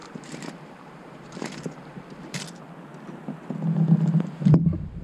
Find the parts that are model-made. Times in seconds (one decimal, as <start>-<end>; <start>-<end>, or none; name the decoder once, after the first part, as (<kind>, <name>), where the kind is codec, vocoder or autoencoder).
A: 0.0-2.4 (vocoder, BigVGAN v2)